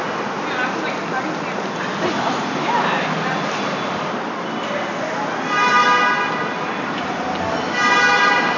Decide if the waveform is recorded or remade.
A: recorded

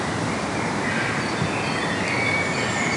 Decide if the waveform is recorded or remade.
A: recorded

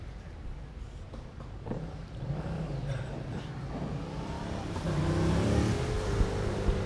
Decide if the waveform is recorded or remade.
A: remade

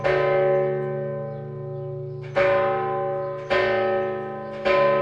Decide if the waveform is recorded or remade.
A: recorded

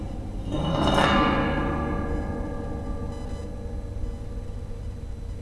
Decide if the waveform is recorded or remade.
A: recorded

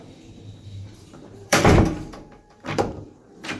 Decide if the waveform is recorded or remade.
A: remade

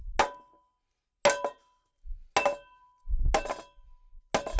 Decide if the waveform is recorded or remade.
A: recorded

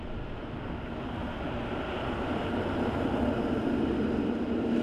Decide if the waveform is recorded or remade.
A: recorded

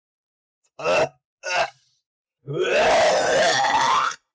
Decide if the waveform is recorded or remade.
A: recorded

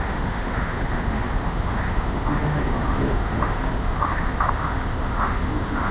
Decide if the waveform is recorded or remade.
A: remade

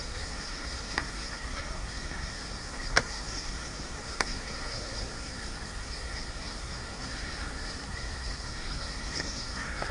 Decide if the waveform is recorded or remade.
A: remade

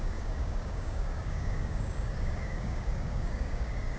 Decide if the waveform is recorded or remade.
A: remade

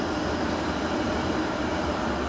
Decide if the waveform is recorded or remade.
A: recorded